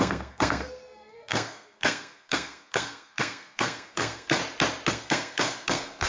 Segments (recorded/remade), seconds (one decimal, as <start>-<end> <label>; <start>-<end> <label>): 0.0-4.4 remade; 4.4-4.9 recorded; 4.9-6.1 remade